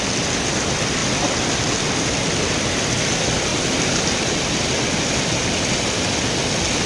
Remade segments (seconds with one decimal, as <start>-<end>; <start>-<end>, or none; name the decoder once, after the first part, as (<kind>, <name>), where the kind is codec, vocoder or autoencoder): none